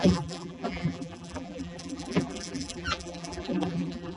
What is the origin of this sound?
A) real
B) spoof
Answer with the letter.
B